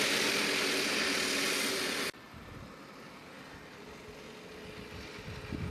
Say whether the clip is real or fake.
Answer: real